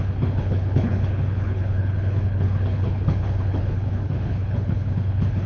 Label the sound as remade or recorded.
remade